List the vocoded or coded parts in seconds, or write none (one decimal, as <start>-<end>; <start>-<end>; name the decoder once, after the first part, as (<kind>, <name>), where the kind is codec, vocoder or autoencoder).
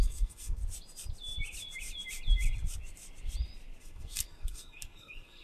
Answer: 0.0-0.6 (codec, SNAC); 3.8-5.4